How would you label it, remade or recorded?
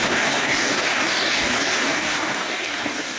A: remade